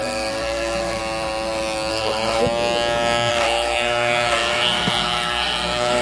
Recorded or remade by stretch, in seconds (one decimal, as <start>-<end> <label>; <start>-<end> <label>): 0.0-1.0 remade; 1.0-1.9 recorded; 1.9-2.4 remade; 2.4-3.3 recorded; 3.3-6.0 remade